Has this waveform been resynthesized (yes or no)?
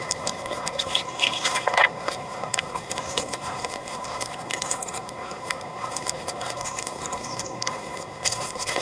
yes